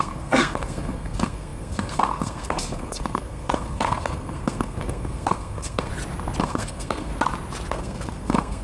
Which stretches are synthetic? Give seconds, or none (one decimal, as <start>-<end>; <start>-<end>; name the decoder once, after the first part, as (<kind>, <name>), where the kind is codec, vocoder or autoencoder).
0.0-5.9 (codec, SNAC); 6.4-7.1; 7.7-8.6